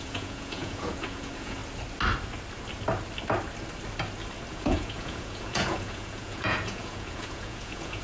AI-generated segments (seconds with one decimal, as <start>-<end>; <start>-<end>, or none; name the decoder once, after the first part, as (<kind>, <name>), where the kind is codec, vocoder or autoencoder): 0.0-1.6 (vocoder, Vocos); 4.5-8.0